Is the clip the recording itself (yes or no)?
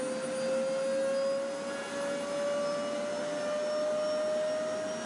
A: yes